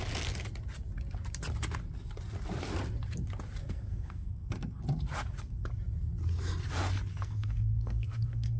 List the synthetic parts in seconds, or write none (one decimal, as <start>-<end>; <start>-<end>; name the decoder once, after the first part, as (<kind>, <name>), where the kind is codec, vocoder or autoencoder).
3.6-4.8 (codec, SNAC); 7.1-8.6